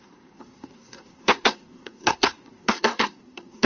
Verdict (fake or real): fake